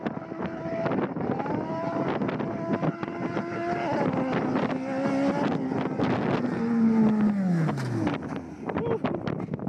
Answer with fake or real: real